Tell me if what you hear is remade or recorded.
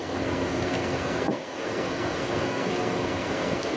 remade